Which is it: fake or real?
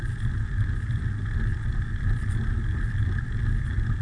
real